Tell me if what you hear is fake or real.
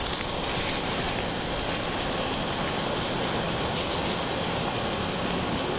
real